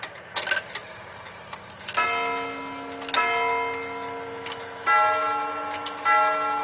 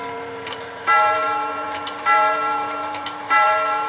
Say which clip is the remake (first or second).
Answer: second